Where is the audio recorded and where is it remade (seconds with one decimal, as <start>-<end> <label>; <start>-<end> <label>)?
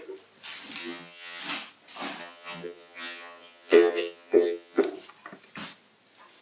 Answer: 0.0-0.8 recorded; 0.8-1.4 remade; 1.4-2.2 recorded; 2.2-4.8 remade; 4.8-6.4 recorded